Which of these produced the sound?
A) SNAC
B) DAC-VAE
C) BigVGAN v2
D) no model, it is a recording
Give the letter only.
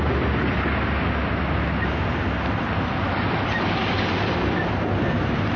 D